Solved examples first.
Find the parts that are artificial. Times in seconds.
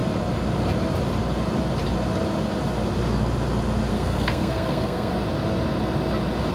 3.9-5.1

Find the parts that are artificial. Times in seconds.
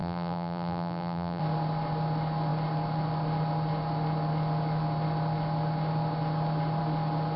0.0-1.4